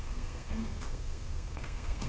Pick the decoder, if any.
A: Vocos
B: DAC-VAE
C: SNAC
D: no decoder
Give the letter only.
C